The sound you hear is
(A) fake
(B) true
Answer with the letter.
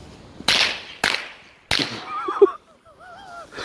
B